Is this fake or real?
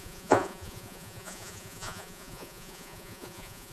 fake